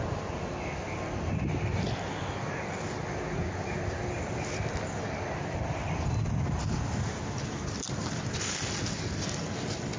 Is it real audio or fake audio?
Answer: real